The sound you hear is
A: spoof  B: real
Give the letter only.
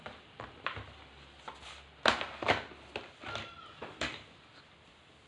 B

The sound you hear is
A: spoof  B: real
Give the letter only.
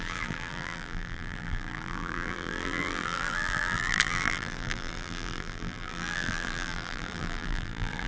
A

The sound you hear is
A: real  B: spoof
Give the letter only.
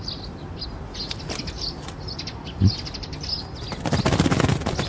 A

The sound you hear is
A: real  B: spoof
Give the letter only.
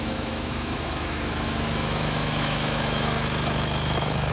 B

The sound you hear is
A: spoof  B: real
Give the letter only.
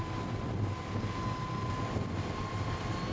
B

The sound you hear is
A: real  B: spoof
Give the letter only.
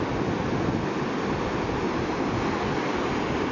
A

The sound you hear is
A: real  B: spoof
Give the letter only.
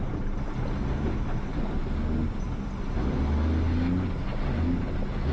A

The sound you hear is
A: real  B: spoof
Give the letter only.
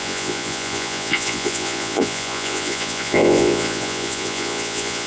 B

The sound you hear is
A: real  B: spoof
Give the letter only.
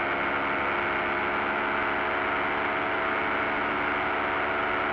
A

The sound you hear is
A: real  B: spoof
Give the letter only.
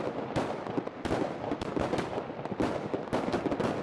A